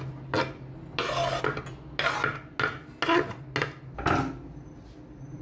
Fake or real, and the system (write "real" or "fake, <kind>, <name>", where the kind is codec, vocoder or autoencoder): real